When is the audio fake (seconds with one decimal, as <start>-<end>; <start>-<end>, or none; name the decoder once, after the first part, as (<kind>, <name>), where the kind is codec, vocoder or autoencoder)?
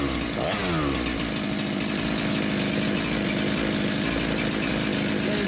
none